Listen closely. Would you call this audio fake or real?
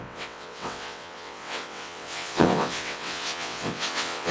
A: fake